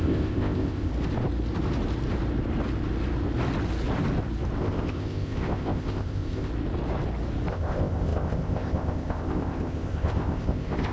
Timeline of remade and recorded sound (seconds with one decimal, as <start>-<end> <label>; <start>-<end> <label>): 0.0-0.9 remade; 0.9-4.6 recorded; 4.6-6.5 remade; 6.5-7.5 recorded; 7.5-10.9 remade